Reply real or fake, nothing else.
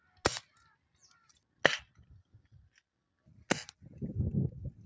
real